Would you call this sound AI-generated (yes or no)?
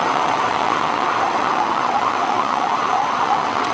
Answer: yes